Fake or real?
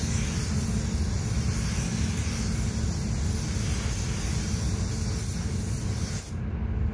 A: real